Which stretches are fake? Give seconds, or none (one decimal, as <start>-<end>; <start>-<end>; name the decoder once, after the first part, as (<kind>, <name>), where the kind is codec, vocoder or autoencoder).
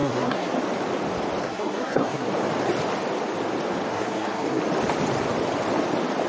0.0-0.5 (codec, SNAC); 1.4-2.3; 3.9-4.6